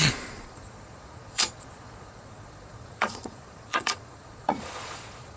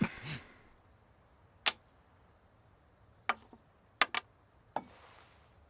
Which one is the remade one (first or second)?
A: first